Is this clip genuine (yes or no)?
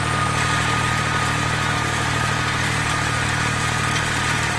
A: yes